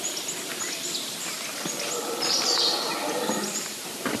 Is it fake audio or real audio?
fake